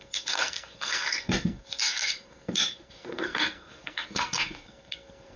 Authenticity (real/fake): fake